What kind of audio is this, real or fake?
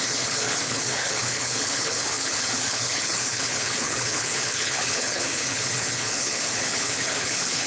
fake